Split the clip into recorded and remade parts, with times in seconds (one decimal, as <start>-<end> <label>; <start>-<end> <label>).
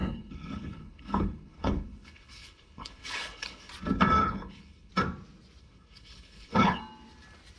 0.0-3.7 remade; 3.7-4.2 recorded; 4.2-4.9 remade; 4.9-5.6 recorded; 5.6-6.8 remade; 6.8-7.6 recorded